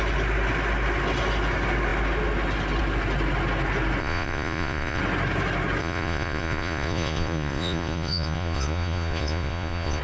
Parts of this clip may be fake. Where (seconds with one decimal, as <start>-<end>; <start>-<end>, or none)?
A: 4.0-5.0; 5.8-10.0